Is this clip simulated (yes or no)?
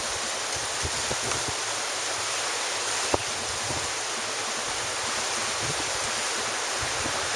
no